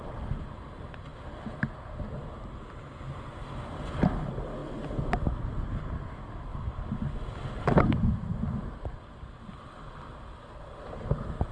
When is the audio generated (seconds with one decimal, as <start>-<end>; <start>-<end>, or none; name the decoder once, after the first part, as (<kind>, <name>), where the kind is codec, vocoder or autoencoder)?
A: none